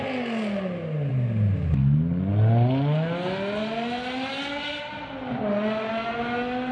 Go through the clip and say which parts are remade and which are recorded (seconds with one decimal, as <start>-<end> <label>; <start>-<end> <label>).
0.0-6.7 recorded